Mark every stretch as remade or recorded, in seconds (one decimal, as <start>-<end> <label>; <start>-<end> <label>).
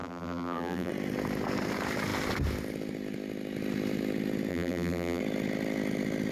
0.0-0.9 remade; 0.9-4.5 recorded; 4.5-5.2 remade; 5.2-6.3 recorded